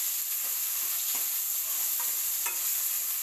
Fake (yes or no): yes